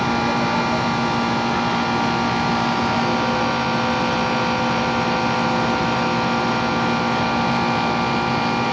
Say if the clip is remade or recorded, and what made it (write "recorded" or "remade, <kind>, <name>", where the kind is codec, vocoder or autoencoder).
recorded